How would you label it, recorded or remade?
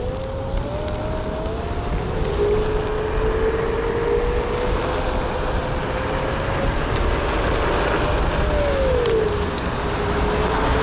recorded